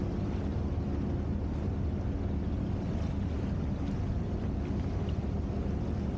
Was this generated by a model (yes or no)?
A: no